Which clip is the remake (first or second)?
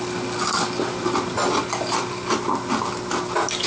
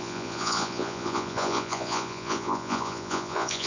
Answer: second